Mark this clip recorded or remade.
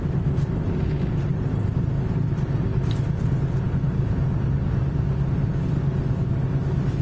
recorded